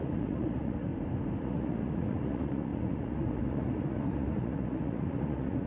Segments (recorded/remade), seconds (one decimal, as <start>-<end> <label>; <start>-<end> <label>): 0.0-0.9 remade; 0.9-1.4 recorded; 1.4-5.7 remade